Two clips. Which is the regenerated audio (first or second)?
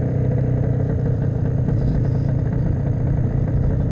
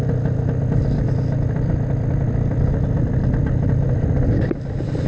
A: first